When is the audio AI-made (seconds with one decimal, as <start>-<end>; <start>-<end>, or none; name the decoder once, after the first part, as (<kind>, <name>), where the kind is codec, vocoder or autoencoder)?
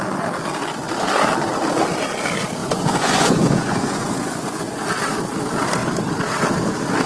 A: 2.6-4.8 (vocoder, Vocos)